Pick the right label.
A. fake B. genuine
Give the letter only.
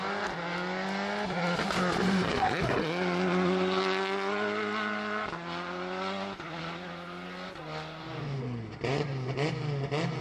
B